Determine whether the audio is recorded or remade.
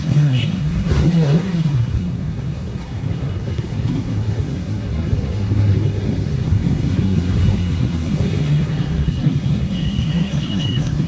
remade